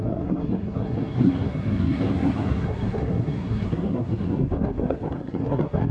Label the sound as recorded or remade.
remade